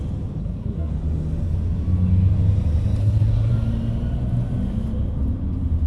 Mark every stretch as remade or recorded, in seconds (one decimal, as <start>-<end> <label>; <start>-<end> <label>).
0.0-0.4 recorded; 0.4-0.9 remade; 0.9-3.0 recorded; 3.0-3.5 remade; 3.5-5.9 recorded